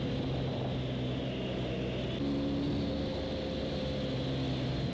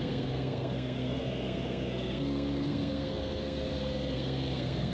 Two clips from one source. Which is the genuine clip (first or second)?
first